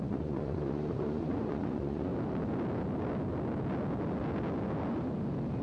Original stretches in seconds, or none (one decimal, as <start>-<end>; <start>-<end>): 2.1-5.6